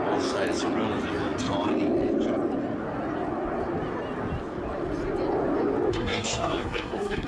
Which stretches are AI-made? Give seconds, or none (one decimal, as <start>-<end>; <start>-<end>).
5.9-7.3